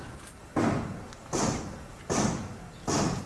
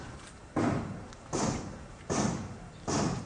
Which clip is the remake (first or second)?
second